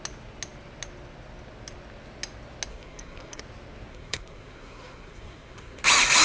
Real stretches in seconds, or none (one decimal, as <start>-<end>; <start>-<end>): 0.0-2.7; 3.4-3.9; 5.8-6.2